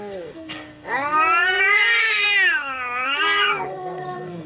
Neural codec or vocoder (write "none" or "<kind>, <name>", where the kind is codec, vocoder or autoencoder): codec, SNAC